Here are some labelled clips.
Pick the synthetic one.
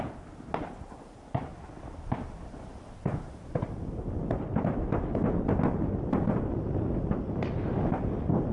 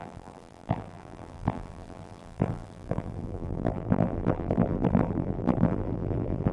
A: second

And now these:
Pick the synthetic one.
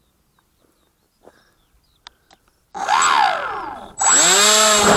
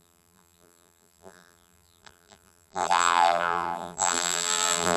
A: second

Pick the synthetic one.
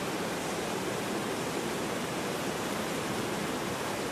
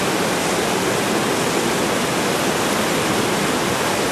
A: first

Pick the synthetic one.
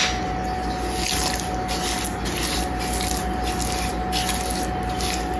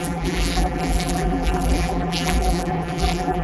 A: second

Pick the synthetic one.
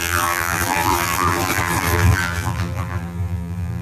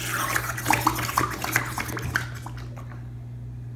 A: first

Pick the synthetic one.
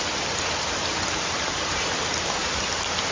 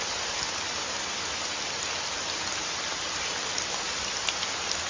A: first